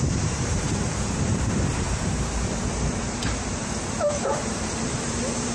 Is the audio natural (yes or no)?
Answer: no